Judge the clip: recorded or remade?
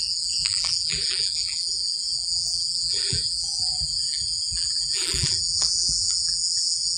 remade